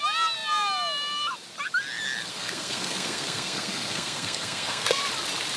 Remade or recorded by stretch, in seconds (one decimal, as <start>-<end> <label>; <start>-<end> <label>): 0.0-2.3 recorded; 2.3-5.0 remade; 5.0-5.6 recorded